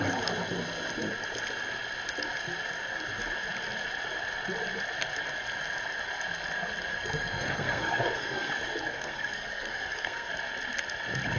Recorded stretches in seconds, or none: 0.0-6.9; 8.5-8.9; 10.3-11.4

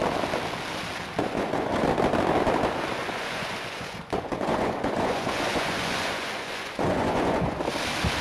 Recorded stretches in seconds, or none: 0.0-1.2; 1.8-3.0; 7.6-8.2

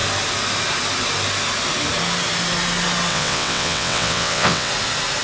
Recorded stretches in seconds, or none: 0.0-3.1; 4.7-5.2

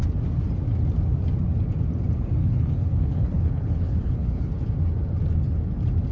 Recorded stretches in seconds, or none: 0.0-2.4; 4.5-6.1

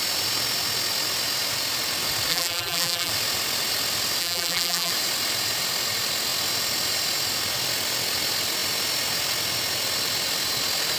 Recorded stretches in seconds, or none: 0.0-2.3; 3.1-4.2; 4.9-11.0

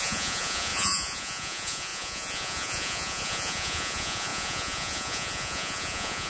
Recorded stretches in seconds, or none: none

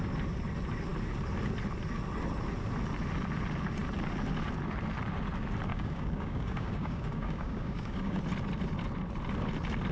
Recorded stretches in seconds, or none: 0.0-5.7; 8.2-9.9

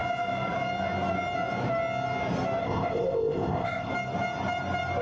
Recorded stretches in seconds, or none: 0.0-2.6; 3.9-5.0